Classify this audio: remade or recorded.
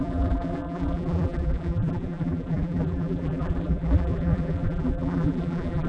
remade